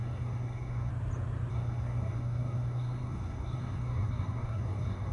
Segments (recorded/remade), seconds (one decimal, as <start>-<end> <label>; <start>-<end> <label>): 0.0-0.9 remade; 0.9-1.5 recorded; 1.5-5.1 remade